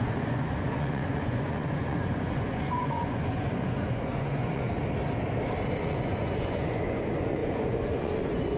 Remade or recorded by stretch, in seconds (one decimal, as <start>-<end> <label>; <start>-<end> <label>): 0.0-4.8 remade; 4.8-5.7 recorded; 5.7-8.6 remade